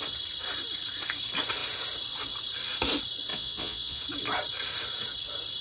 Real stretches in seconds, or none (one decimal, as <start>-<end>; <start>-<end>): 0.0-3.3; 4.0-5.6